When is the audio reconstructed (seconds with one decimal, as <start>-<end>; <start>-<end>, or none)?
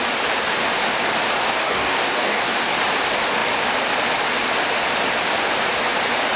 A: 1.6-2.4